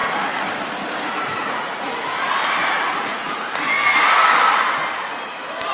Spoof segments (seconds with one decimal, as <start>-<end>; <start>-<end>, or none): 0.0-0.5; 1.3-1.9; 2.6-3.4